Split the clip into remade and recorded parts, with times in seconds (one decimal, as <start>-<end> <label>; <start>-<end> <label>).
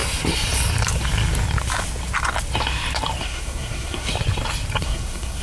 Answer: 0.0-3.2 recorded; 3.2-4.1 remade; 4.1-4.8 recorded; 4.8-5.4 remade